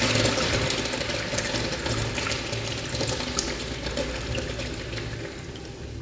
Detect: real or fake real